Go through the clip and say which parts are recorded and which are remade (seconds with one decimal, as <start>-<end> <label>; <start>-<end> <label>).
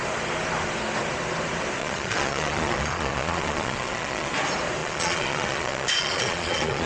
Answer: 0.0-1.8 recorded; 1.8-4.3 remade; 4.3-4.8 recorded; 4.8-6.9 remade